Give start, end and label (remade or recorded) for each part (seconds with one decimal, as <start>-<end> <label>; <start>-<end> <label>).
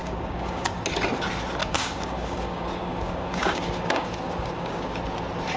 0.0-0.8 remade; 0.8-1.6 recorded; 1.6-5.0 remade; 5.0-5.6 recorded